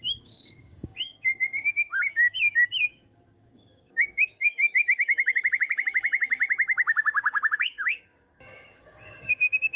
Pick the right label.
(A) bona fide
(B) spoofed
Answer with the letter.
B